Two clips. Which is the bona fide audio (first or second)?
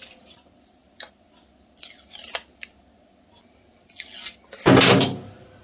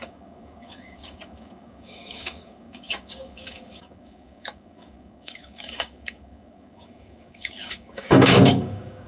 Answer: first